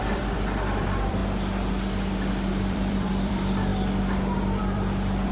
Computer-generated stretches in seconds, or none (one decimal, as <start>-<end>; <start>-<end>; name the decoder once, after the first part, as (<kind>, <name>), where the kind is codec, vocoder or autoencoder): 0.0-1.2 (vocoder, BigVGAN v2); 2.5-3.7; 4.6-5.3